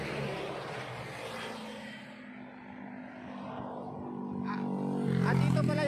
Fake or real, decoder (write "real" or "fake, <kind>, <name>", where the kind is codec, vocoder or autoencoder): real